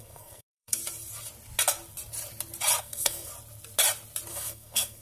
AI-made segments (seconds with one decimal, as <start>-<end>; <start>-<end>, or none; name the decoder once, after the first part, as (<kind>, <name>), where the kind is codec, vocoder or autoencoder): 0.0-0.8 (codec, SNAC); 2.8-3.3; 4.3-5.0